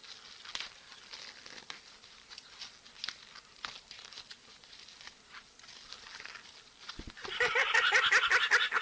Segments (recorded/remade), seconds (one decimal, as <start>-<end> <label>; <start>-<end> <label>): 0.0-8.8 recorded